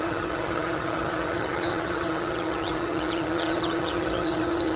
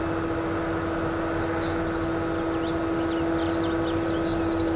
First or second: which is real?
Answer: second